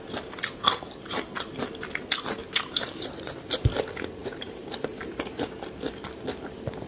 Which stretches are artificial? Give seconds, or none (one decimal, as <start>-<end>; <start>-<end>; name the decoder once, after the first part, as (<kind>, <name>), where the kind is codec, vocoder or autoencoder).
2.4-3.2 (vocoder, BigVGAN v2); 4.2-5.4